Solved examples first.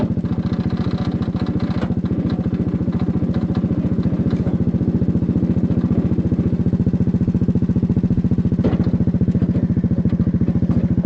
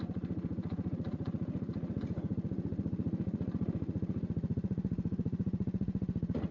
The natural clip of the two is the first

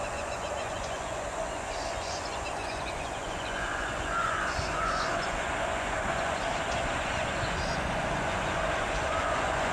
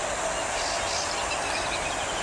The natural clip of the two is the second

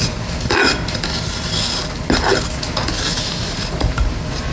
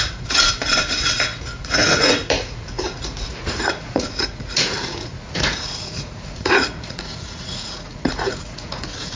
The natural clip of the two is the first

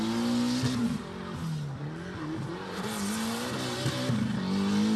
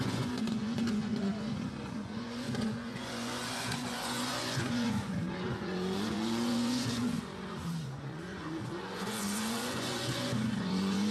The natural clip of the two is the first